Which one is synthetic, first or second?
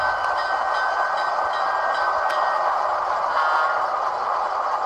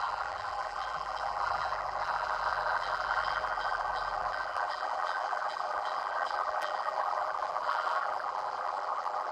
second